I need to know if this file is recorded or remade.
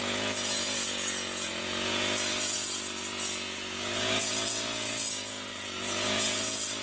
remade